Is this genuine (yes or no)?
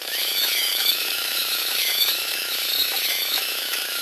no